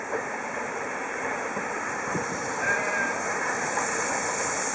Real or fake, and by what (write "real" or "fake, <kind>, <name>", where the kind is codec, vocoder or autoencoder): fake, vocoder, BigVGAN v2